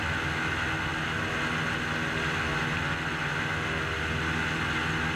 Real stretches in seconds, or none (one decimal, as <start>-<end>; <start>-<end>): 0.0-5.2